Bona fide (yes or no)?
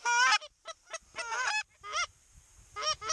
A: yes